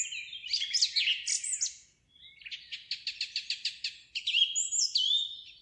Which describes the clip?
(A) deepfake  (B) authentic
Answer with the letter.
B